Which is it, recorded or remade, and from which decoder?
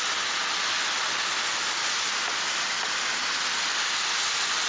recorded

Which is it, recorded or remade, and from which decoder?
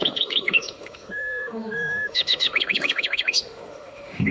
remade, autoencoder, DAC-VAE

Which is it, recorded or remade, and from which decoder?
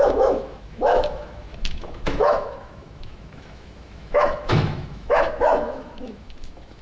remade, autoencoder, DAC-VAE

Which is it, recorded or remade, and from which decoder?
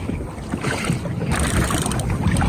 recorded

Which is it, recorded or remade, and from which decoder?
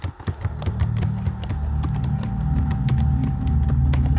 recorded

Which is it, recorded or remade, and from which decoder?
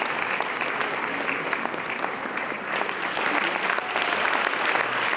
recorded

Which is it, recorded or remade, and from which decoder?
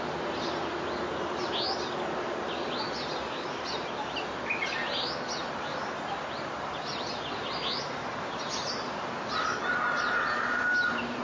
recorded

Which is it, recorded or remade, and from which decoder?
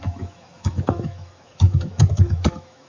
remade, autoencoder, DAC-VAE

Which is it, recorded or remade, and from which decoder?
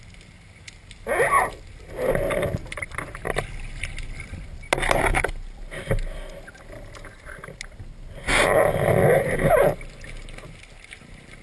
recorded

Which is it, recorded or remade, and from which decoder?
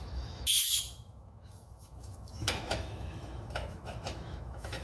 remade, autoencoder, DAC-VAE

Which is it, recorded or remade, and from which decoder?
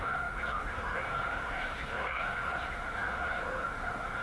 remade, autoencoder, DAC-VAE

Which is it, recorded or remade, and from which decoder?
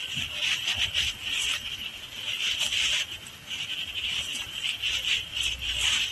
recorded